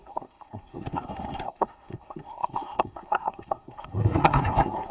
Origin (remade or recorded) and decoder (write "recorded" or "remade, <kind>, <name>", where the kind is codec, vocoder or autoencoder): remade, codec, SNAC